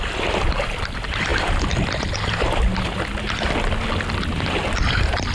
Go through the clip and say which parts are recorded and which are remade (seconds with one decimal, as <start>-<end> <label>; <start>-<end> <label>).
0.0-5.3 recorded